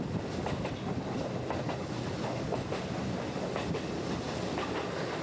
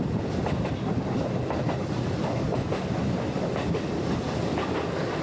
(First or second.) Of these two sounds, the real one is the first